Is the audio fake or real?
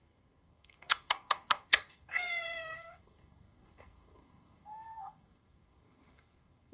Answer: fake